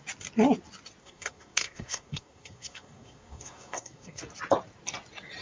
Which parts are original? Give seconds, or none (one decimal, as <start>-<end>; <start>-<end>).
0.0-1.0; 4.2-5.4